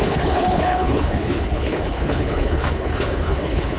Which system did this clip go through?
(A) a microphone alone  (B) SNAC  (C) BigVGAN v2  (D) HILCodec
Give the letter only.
D